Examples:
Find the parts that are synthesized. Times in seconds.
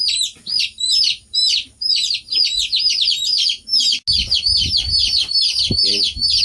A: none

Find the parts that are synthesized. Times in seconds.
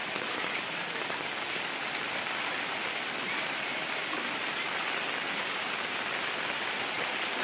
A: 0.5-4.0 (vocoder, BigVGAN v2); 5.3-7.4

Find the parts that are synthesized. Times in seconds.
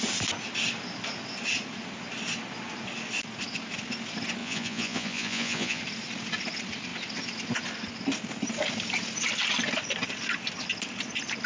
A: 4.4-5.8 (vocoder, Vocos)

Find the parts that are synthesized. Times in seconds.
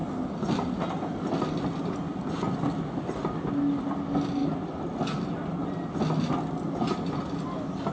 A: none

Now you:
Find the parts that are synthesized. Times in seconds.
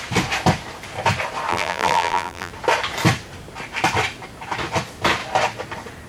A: 1.5-2.5 (vocoder, BigVGAN v2)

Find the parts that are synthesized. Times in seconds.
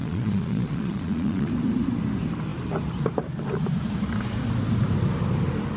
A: 0.0-1.5 (vocoder, Vocos)